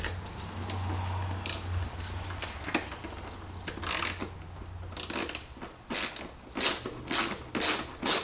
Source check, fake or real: real